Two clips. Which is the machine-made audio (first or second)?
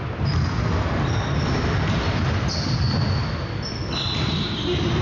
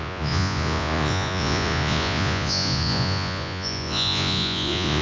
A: second